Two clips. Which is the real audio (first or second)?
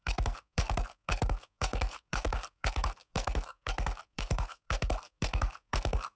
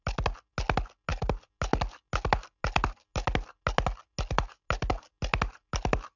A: second